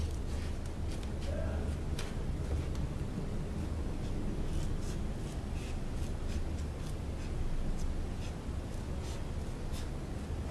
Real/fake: real